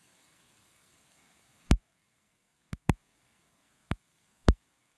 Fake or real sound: fake